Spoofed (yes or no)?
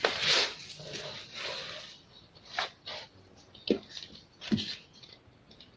no